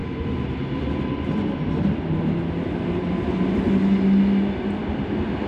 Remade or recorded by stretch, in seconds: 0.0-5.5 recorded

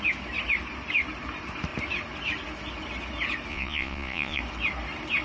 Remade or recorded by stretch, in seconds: 0.0-3.5 recorded; 3.5-4.4 remade; 4.4-5.2 recorded

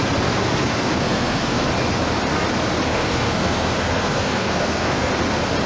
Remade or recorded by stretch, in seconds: 0.0-0.4 recorded; 0.4-1.7 remade; 1.7-2.9 recorded; 2.9-5.1 remade; 5.1-5.7 recorded